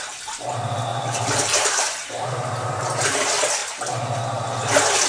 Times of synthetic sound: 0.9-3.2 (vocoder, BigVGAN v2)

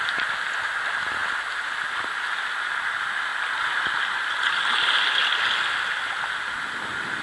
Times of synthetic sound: none

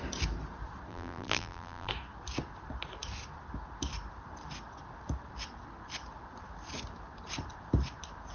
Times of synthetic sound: 0.9-1.9 (vocoder, BigVGAN v2)

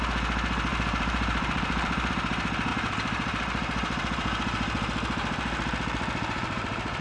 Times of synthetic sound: 0.7-2.1 (vocoder, BigVGAN v2); 2.7-7.0

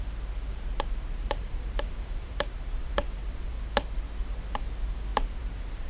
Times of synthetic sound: 0.7-3.5 (vocoder, BigVGAN v2); 5.1-5.9

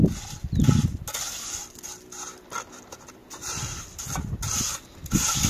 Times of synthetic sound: none

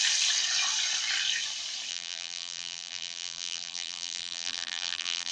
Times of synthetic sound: 1.9-5.3 (vocoder, BigVGAN v2)

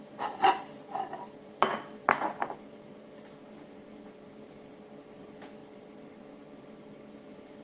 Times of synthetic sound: 5.6-6.4 (vocoder, BigVGAN v2)